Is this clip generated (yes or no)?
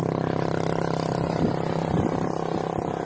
no